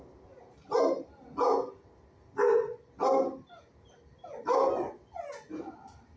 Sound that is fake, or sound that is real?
real